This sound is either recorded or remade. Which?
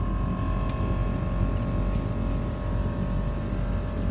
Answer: recorded